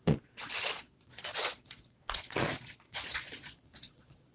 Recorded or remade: remade